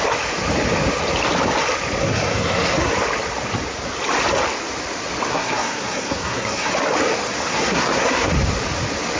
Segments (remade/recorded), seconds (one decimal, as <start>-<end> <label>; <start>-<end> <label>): 0.0-2.0 recorded; 2.0-2.9 remade; 2.9-5.3 recorded; 5.3-6.7 remade; 6.7-7.5 recorded; 7.5-8.3 remade; 8.3-9.2 recorded